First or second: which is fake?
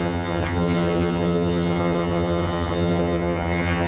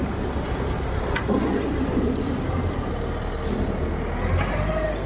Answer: first